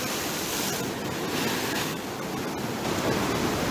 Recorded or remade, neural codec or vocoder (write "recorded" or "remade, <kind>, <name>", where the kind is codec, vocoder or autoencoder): recorded